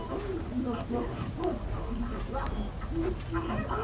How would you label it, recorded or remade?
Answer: recorded